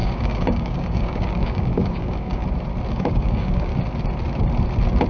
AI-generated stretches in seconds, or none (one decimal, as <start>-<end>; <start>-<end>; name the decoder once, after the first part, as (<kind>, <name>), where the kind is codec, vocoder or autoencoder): 0.0-2.4 (codec, DAC); 2.9-3.7

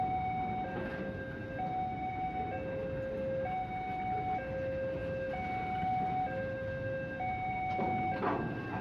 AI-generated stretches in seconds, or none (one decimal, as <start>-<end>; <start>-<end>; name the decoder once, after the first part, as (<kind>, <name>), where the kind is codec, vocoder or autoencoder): none

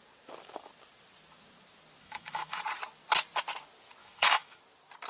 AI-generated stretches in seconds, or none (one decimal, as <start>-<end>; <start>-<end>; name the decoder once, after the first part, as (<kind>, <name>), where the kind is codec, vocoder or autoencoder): 2.0-2.6 (autoencoder, DAC-VAE); 4.0-4.6

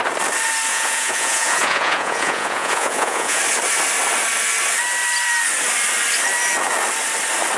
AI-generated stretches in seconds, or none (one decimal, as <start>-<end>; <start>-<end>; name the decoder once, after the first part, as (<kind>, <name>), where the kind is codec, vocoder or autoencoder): 0.7-3.4 (vocoder, Vocos)